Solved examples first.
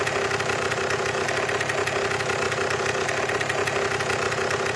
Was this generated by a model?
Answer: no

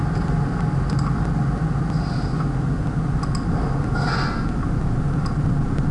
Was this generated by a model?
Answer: no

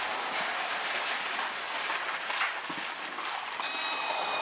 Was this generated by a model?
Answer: no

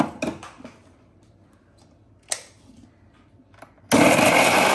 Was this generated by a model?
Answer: no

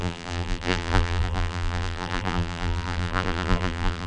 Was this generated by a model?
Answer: yes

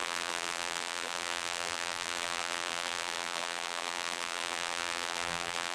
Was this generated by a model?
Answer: yes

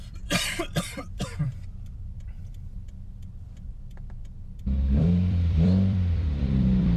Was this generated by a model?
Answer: yes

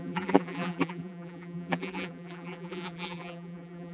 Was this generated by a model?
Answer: yes